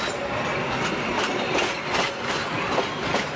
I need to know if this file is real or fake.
real